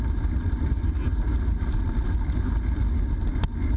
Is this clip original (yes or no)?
yes